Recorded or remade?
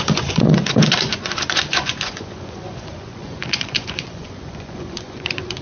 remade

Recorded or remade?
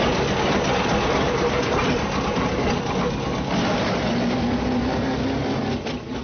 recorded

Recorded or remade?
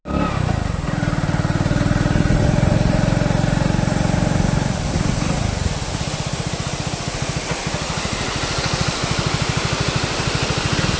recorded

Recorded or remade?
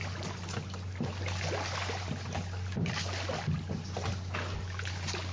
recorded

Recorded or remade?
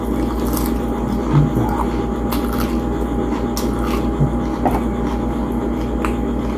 recorded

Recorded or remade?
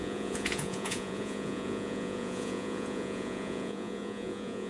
remade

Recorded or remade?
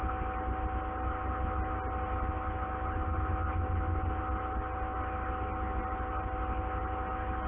recorded